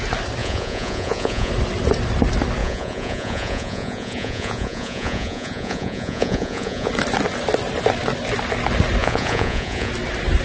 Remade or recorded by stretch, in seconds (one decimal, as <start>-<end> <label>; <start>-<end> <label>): 0.0-0.4 recorded; 0.4-1.5 remade; 1.5-2.6 recorded; 2.6-6.9 remade; 6.9-9.0 recorded; 9.0-9.9 remade; 9.9-10.4 recorded

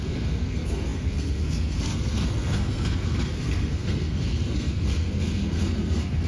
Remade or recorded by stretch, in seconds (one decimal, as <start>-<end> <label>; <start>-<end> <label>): 0.0-6.3 remade

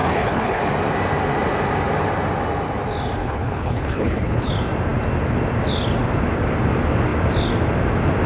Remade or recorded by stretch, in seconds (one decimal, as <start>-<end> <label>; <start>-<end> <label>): 0.0-0.6 remade; 0.6-3.2 recorded; 3.2-4.5 remade; 4.5-8.3 recorded

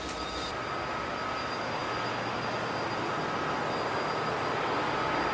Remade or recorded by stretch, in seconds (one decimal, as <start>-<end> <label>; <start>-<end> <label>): 0.0-5.3 recorded

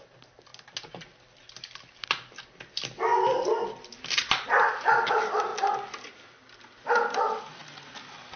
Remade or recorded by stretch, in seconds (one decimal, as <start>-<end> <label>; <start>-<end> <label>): 0.0-0.5 remade; 0.5-2.4 recorded; 2.4-3.1 remade; 3.1-5.1 recorded; 5.1-7.6 remade; 7.6-8.4 recorded

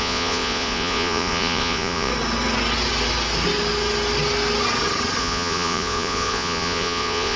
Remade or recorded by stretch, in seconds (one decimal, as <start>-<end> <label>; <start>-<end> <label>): 0.0-2.1 remade; 2.1-5.2 recorded; 5.2-7.4 remade

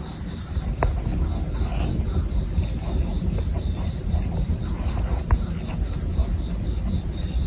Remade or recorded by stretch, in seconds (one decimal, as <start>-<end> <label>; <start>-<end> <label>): 0.0-7.5 recorded